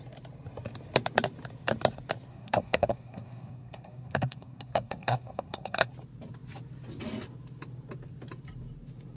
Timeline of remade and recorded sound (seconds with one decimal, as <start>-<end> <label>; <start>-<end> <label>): 0.0-2.3 recorded; 2.3-5.9 remade; 5.9-9.2 recorded